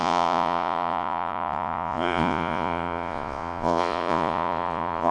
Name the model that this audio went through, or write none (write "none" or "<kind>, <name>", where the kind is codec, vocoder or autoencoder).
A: vocoder, Vocos